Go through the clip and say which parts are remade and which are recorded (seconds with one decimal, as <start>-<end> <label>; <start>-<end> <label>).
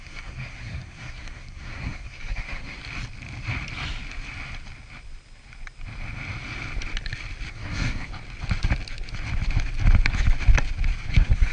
0.0-2.8 remade; 2.8-7.5 recorded; 7.5-8.1 remade; 8.1-11.1 recorded; 11.1-11.5 remade